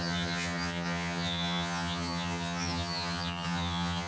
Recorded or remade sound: remade